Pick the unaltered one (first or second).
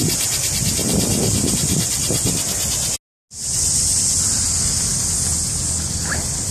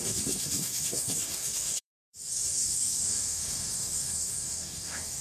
first